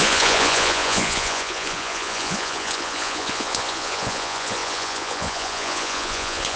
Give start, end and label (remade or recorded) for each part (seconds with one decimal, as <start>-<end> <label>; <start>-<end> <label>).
0.0-6.6 remade